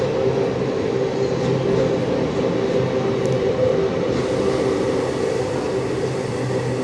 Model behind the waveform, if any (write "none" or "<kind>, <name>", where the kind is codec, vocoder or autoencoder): none